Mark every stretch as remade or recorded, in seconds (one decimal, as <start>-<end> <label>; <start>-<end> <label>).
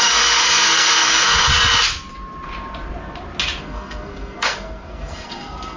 0.0-1.5 remade; 1.5-3.6 recorded; 3.6-5.8 remade